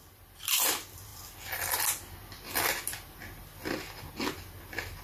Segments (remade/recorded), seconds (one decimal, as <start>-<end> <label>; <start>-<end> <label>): 0.0-5.0 recorded